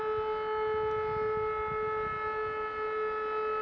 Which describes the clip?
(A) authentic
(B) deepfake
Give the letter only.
A